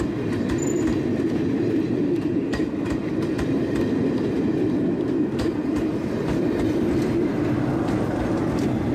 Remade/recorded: recorded